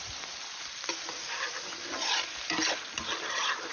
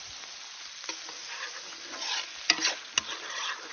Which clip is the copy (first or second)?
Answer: first